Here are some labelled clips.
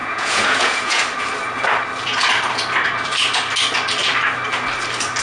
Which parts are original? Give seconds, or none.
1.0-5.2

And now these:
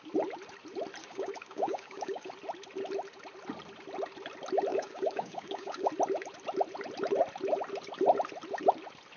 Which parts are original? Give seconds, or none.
0.0-1.0; 2.3-4.7; 5.9-9.2

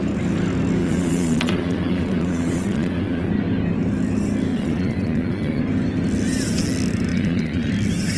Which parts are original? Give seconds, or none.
0.0-0.8; 3.3-4.5; 5.6-7.1; 7.7-8.2

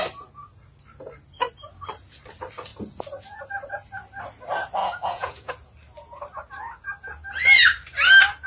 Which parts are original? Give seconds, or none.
0.0-4.8; 5.5-8.5

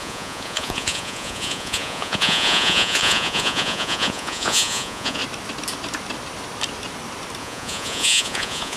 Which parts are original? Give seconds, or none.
5.2-7.4

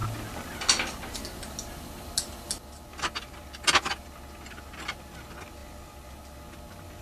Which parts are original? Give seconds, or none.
0.0-5.6; 6.2-7.0

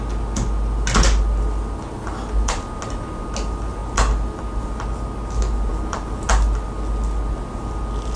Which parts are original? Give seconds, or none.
0.0-5.7; 6.3-8.2